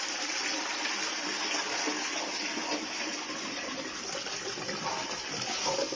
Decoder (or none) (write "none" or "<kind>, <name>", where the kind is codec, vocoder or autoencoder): none